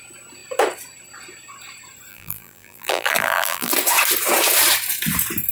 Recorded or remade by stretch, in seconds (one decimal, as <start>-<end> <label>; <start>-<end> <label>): 0.0-2.1 recorded; 2.1-3.7 remade; 3.7-5.5 recorded